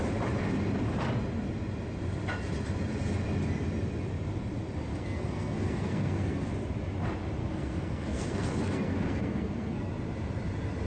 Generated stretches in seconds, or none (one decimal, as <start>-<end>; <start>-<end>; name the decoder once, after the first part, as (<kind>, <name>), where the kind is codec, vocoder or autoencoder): 4.9-6.5 (codec, SNAC); 7.4-9.9